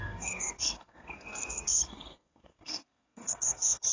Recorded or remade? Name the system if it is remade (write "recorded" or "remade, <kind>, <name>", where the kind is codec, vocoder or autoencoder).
remade, codec, SNAC